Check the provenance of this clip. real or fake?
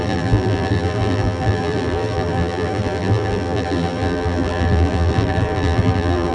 fake